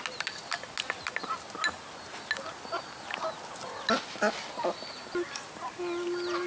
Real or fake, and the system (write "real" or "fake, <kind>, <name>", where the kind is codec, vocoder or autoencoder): real